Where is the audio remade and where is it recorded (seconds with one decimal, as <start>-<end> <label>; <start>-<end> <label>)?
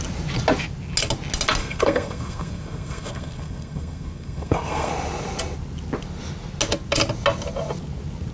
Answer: 0.0-1.6 recorded; 1.6-4.9 remade; 4.9-8.3 recorded